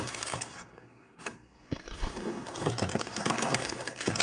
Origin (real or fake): fake